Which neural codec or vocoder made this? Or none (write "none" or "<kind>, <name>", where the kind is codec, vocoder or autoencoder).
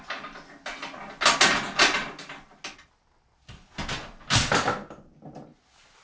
none